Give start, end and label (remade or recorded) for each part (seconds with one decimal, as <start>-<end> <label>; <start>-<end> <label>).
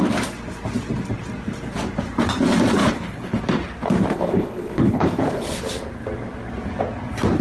0.0-2.8 recorded; 2.8-3.4 remade; 3.4-4.1 recorded; 4.1-5.6 remade; 5.6-7.4 recorded